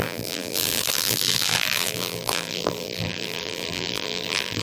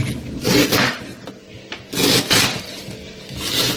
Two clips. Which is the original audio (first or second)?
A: second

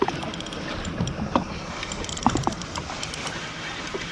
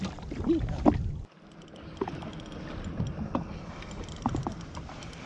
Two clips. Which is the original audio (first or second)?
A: second